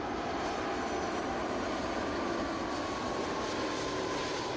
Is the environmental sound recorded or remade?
recorded